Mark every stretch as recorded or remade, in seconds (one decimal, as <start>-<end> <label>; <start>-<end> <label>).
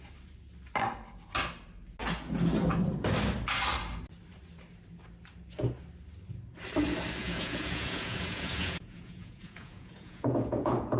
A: 0.0-7.2 recorded; 7.2-11.0 remade